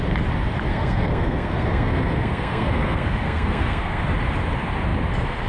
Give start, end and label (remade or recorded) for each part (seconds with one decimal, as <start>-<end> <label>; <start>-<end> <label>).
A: 0.0-0.7 recorded; 0.7-4.0 remade; 4.0-5.5 recorded

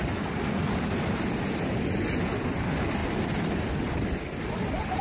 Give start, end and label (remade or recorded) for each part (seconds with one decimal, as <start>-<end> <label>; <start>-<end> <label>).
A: 0.0-5.0 recorded

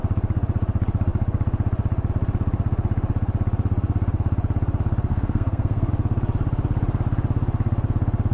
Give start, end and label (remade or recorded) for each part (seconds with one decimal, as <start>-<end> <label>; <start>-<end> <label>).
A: 0.0-5.1 recorded; 5.1-5.9 remade; 5.9-8.3 recorded